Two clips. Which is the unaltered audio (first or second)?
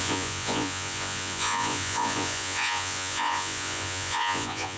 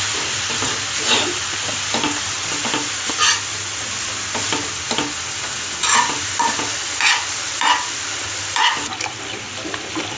second